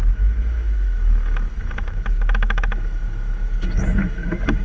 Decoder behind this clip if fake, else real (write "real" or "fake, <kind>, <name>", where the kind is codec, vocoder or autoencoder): fake, autoencoder, DAC-VAE